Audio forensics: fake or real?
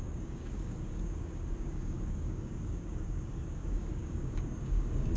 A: fake